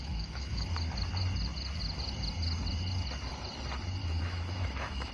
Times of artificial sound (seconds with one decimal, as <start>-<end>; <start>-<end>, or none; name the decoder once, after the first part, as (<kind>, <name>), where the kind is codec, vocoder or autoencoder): 0.0-0.6 (autoencoder, DAC-VAE); 4.0-5.1